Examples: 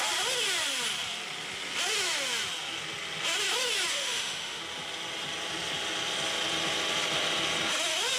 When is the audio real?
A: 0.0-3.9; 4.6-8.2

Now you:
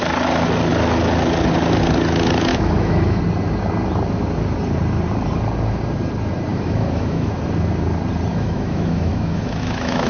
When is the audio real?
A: 0.0-2.5; 3.2-6.5; 7.3-8.3

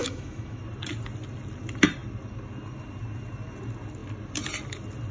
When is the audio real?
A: 0.6-5.1

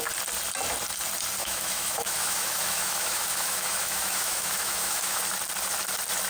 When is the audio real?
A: 0.0-1.4; 5.2-6.3

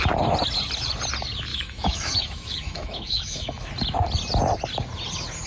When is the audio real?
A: 0.0-1.5; 3.7-5.5

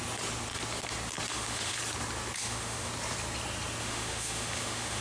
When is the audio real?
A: 0.0-1.3; 1.8-2.4; 2.9-3.8

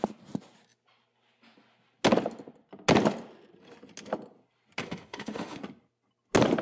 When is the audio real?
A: 0.0-4.8; 5.6-6.6

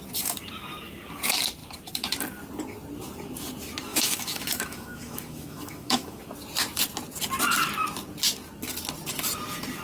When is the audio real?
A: 0.0-3.9; 6.2-9.8